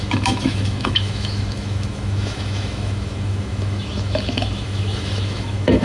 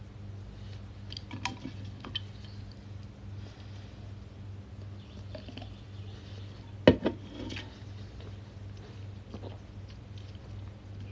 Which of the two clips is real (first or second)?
second